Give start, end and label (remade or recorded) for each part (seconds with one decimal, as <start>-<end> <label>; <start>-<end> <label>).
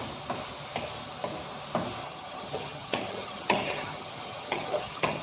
0.0-2.0 recorded; 2.0-5.2 remade